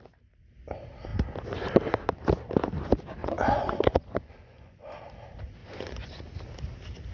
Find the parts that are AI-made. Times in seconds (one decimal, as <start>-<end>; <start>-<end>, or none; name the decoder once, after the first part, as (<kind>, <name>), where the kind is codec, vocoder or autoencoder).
3.2-5.0 (vocoder, Vocos); 5.6-6.1